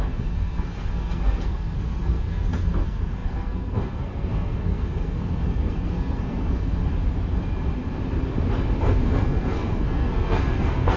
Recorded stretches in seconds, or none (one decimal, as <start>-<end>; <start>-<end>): 6.8-8.8